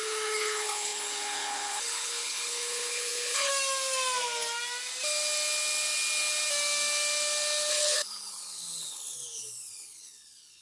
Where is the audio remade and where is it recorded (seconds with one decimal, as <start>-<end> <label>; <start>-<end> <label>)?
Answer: 0.0-3.5 remade; 3.5-7.7 recorded; 7.7-10.6 remade